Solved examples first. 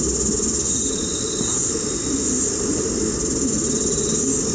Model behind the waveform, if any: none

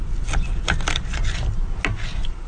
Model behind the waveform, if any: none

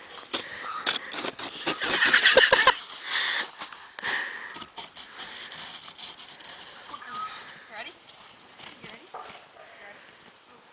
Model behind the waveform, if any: none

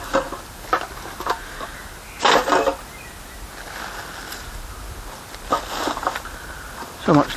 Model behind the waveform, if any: none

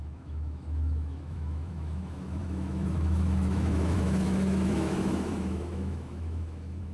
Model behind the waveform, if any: autoencoder, DAC-VAE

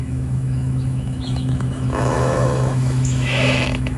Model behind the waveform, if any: autoencoder, DAC-VAE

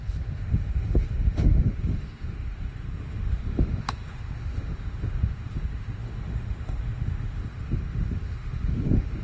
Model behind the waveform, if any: autoencoder, DAC-VAE